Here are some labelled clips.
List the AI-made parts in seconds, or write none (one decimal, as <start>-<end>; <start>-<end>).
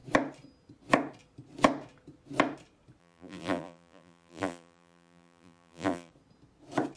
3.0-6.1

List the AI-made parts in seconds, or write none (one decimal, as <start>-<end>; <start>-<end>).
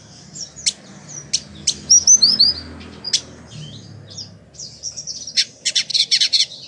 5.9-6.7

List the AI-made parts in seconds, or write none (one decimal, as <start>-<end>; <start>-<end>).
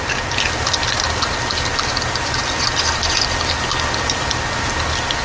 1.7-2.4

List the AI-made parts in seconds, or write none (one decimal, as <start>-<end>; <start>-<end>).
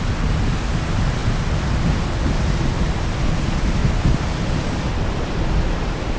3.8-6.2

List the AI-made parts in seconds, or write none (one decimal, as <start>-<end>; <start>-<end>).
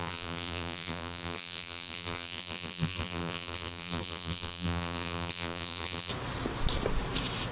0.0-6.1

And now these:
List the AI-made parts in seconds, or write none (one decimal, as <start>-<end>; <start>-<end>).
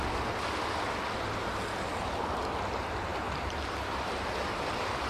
3.1-4.3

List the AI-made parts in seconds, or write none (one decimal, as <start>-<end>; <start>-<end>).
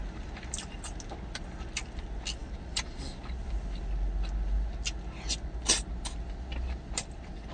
none